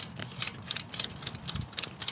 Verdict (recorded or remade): recorded